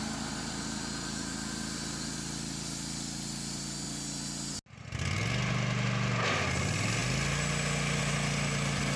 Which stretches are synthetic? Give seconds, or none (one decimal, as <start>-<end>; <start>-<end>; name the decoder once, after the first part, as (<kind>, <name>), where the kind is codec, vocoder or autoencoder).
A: none